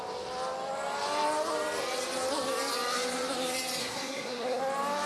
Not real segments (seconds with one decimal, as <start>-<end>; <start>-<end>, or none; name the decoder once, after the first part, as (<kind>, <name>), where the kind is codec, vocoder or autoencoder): 3.8-4.6 (codec, SNAC)